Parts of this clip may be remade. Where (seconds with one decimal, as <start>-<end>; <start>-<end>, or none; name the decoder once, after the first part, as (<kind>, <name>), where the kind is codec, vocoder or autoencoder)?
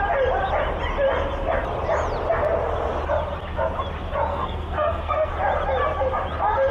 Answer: 4.3-5.3 (codec, SNAC)